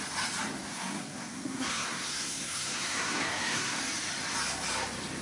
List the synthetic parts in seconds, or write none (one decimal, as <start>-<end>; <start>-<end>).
0.7-3.8